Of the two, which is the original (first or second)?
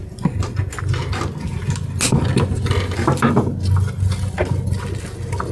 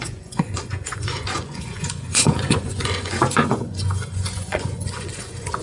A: first